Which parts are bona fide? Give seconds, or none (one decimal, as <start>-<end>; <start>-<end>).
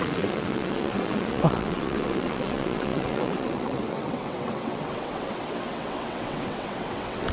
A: none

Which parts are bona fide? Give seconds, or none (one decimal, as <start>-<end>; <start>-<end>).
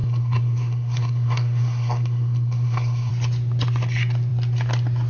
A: 3.1-5.1